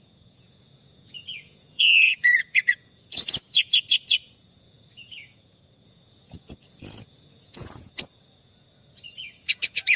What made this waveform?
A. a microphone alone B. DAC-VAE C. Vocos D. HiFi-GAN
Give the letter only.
C